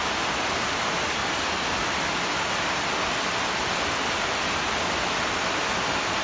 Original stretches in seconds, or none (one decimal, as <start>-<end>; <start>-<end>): 0.0-6.2